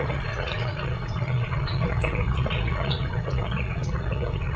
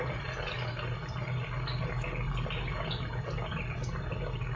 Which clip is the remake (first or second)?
first